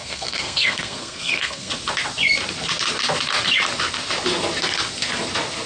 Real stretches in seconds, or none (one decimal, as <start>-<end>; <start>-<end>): 1.7-5.7